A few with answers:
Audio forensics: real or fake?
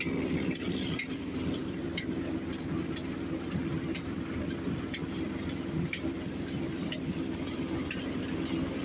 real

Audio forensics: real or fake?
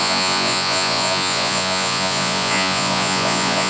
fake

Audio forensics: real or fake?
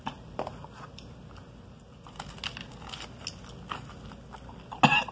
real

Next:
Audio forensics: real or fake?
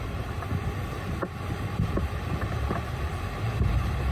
fake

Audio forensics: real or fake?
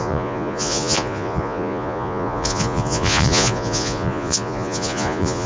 fake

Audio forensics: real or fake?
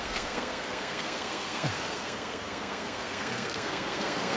fake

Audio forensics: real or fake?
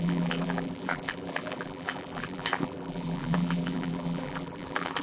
fake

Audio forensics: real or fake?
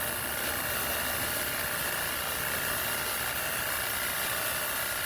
real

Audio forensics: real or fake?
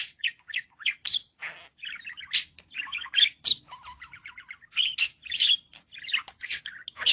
real